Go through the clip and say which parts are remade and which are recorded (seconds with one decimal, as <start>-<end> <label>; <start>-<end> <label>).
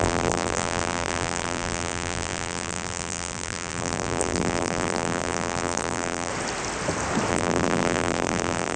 0.0-6.3 remade; 6.3-7.3 recorded; 7.3-8.8 remade